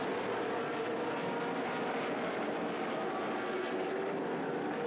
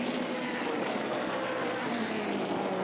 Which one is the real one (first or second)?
first